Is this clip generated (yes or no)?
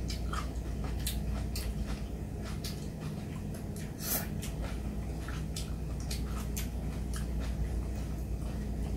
no